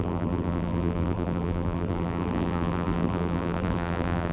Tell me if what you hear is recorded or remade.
remade